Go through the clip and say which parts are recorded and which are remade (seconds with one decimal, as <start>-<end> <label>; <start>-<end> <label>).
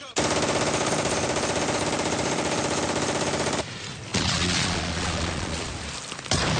0.0-4.1 recorded; 4.1-5.7 remade; 5.7-6.6 recorded